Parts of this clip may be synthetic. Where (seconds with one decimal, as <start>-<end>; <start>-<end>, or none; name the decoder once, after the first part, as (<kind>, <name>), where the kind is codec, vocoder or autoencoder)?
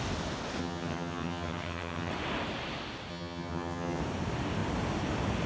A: 0.6-2.1 (vocoder, HiFi-GAN); 3.1-4.0